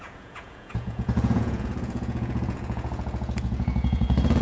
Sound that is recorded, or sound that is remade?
remade